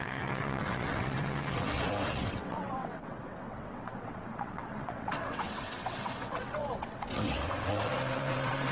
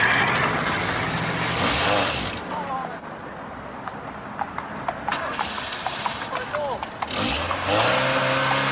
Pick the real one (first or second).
second